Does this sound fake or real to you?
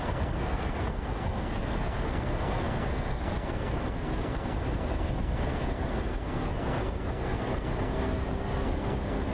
fake